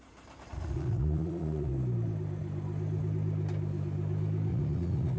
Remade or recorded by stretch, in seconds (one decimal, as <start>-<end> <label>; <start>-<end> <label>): 0.0-0.5 recorded; 0.5-1.7 remade; 1.7-4.5 recorded; 4.5-5.2 remade